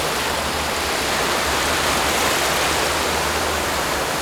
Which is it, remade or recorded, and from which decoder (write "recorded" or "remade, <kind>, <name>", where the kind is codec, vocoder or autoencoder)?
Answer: recorded